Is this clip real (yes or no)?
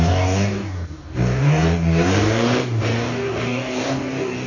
no